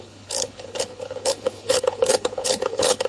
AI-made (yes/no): yes